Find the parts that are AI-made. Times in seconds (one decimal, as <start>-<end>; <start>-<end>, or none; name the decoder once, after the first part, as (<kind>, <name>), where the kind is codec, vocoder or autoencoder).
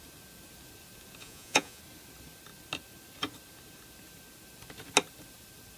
1.2-1.8 (vocoder, Vocos)